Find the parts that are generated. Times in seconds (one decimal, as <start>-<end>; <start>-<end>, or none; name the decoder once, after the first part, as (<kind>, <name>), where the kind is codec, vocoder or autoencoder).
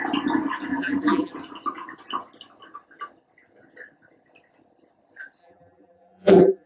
0.7-1.3 (vocoder, BigVGAN v2); 5.4-6.7